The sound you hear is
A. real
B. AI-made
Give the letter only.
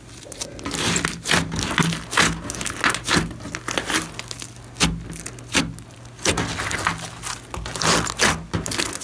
A